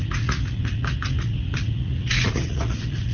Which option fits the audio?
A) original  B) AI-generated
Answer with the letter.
B